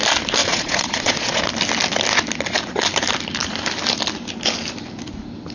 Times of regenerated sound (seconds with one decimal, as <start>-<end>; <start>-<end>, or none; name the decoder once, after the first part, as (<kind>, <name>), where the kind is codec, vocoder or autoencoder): 0.4-1.4 (vocoder, Vocos)